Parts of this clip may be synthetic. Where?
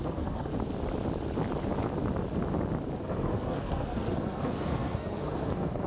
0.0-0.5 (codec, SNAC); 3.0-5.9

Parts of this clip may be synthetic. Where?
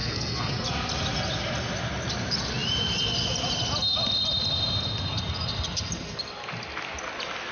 0.0-0.5 (codec, SNAC)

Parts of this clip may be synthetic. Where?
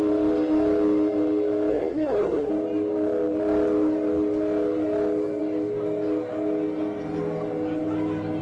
1.7-2.5 (codec, SNAC)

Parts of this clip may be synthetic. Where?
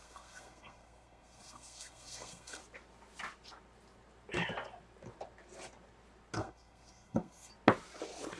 0.0-2.6 (codec, SNAC); 6.4-7.5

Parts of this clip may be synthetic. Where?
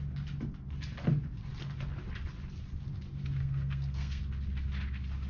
3.4-4.2 (codec, SNAC)